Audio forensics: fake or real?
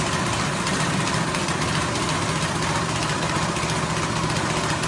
real